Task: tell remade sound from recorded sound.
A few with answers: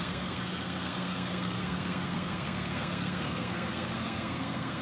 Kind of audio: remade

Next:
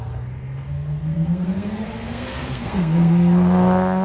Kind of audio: remade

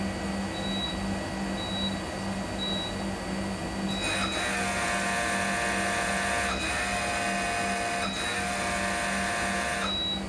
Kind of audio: recorded